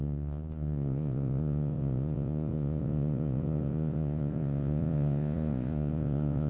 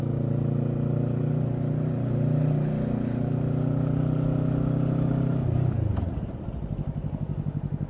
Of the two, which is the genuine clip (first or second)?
second